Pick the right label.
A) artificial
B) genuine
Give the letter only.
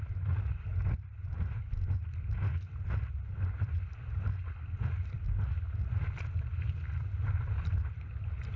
B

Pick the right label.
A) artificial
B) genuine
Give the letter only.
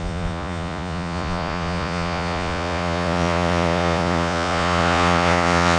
A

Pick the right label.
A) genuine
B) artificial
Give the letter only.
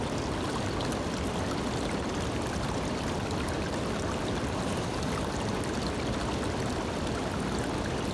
A